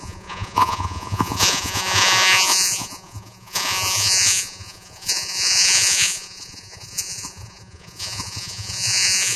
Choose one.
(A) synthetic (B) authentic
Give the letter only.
A